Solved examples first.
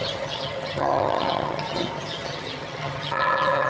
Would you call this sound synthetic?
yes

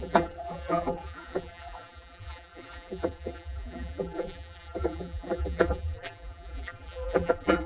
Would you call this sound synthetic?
yes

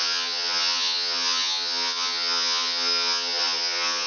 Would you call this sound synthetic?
yes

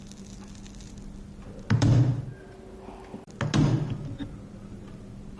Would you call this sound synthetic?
no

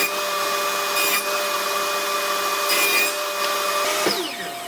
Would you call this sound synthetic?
no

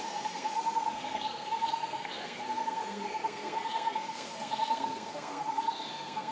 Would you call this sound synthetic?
yes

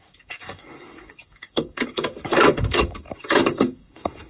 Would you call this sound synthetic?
yes